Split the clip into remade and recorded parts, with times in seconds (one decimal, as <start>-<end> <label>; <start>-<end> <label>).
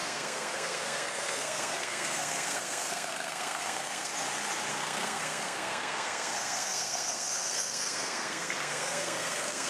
0.0-4.1 remade; 4.1-4.7 recorded; 4.7-9.7 remade